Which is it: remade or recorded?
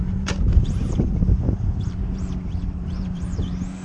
remade